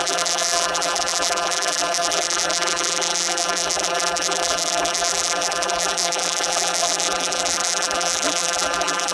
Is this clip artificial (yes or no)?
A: yes